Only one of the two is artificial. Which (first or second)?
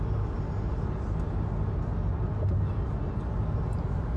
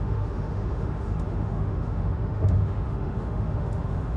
second